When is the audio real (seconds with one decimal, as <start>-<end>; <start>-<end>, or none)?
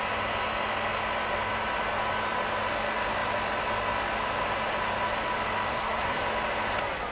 0.0-5.7; 6.2-7.1